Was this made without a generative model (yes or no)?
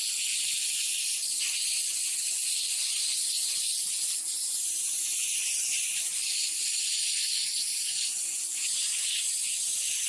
yes